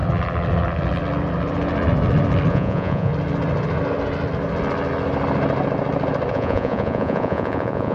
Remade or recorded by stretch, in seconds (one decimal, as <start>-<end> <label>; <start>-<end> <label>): 0.0-2.5 recorded; 2.5-3.1 remade; 3.1-6.3 recorded; 6.3-7.9 remade